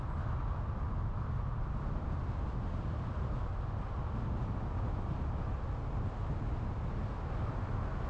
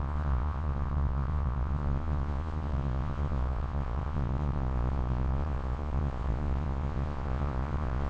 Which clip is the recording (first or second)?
first